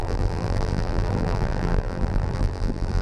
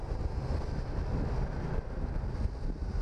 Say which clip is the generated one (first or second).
first